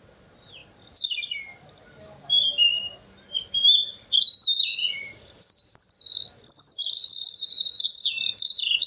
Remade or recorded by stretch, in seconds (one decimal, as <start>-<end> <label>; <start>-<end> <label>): 0.0-4.8 recorded; 4.8-5.5 remade; 5.5-8.9 recorded

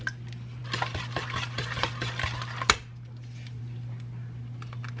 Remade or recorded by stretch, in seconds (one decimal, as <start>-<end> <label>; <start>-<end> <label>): 0.0-5.0 recorded

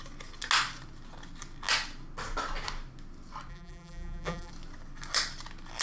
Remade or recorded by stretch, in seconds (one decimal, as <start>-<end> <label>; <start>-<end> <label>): 0.0-3.5 recorded; 3.5-4.5 remade; 4.5-5.8 recorded